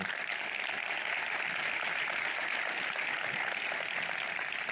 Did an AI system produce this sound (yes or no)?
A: no